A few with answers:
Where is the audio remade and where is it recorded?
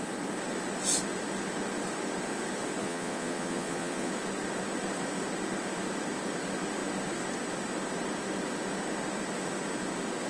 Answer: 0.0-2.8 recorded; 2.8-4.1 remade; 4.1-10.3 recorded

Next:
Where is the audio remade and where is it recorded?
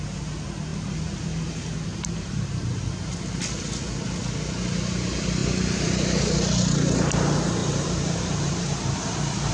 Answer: 0.0-1.9 recorded; 1.9-2.5 remade; 2.5-5.4 recorded; 5.4-6.2 remade; 6.2-7.6 recorded; 7.6-9.5 remade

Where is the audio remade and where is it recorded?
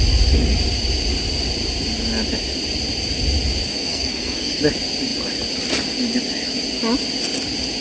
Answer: 0.0-3.7 recorded; 3.7-4.6 remade; 4.6-7.8 recorded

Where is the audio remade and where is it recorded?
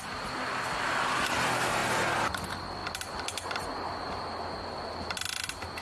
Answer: 0.0-5.8 recorded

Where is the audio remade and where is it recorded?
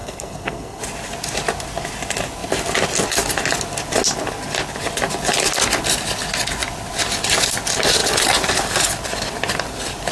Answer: 0.0-0.8 remade; 0.8-10.1 recorded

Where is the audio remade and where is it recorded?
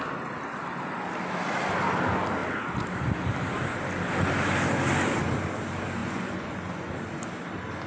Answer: 0.0-6.0 recorded; 6.0-6.9 remade; 6.9-7.9 recorded